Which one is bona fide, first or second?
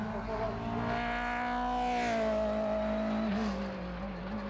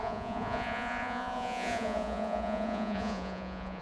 first